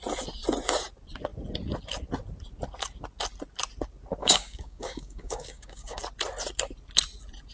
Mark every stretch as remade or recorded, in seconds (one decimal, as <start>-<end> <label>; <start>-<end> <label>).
0.0-4.2 recorded; 4.2-6.0 remade; 6.0-7.5 recorded